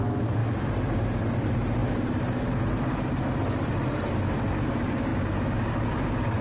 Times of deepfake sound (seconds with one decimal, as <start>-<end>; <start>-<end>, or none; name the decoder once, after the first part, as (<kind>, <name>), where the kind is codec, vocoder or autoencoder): none